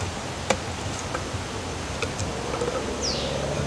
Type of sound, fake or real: real